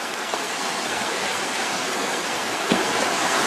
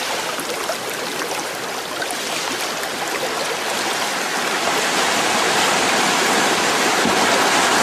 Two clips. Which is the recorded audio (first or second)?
second